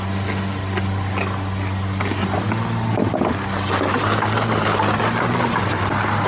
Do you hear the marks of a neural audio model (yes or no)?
no